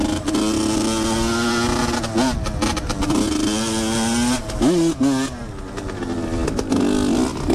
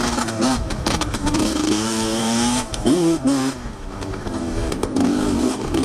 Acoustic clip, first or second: first